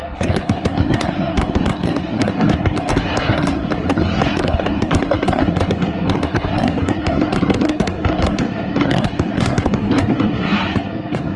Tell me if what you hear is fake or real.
fake